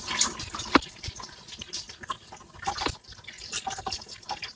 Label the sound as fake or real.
real